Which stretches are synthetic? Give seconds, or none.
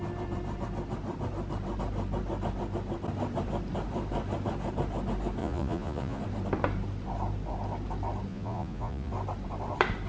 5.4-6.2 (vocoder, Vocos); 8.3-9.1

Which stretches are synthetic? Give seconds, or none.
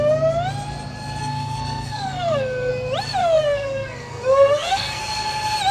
1.2-2.7 (codec, SNAC); 3.2-5.0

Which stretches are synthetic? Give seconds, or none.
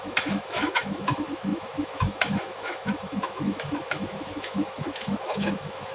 0.0-5.9 (autoencoder, DAC-VAE)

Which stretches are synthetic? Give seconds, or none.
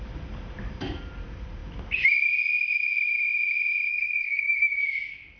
3.9-4.8 (codec, SNAC)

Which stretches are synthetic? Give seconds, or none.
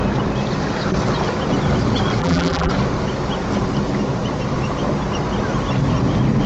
2.2-2.7 (vocoder, BigVGAN v2)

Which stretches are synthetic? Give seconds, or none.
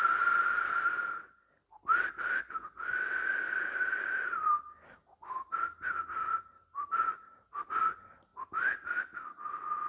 6.1-7.4 (vocoder, BigVGAN v2); 8.3-9.0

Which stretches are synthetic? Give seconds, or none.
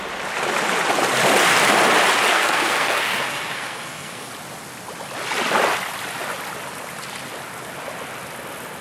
2.3-4.3 (codec, SNAC)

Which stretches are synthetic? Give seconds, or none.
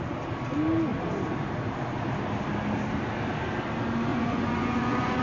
4.1-5.2 (vocoder, Vocos)